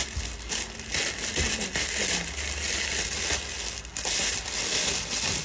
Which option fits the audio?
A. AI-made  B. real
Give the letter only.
B